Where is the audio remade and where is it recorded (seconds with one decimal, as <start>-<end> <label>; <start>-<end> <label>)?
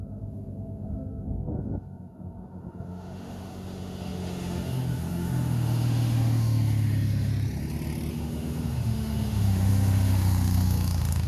0.0-7.3 remade; 7.3-8.1 recorded; 8.1-11.3 remade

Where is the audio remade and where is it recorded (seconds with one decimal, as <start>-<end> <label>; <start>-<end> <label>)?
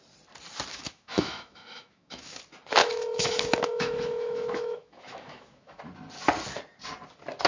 0.0-0.7 recorded; 0.7-2.4 remade; 2.4-2.8 recorded; 2.8-5.8 remade; 5.8-7.5 recorded